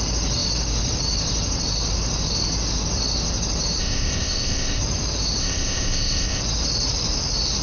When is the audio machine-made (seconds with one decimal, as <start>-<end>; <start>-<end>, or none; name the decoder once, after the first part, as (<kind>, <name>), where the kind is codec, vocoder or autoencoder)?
3.8-4.8 (codec, ZipCodec); 5.4-6.4